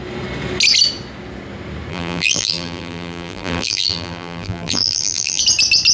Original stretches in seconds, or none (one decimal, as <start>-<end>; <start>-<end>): 0.0-1.9; 5.4-5.9